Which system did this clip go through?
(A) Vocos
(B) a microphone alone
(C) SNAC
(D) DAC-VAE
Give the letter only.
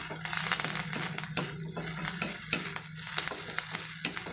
B